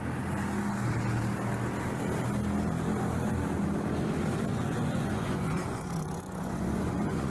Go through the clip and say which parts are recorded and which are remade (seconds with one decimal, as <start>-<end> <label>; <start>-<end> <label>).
0.0-4.5 recorded; 4.5-7.3 remade